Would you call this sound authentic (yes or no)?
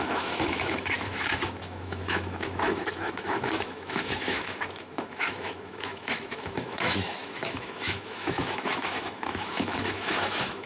no